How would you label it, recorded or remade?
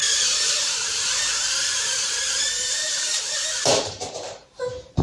remade